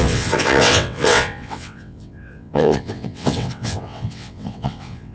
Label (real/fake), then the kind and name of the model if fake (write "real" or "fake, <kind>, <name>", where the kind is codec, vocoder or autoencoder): fake, vocoder, WaveNeXt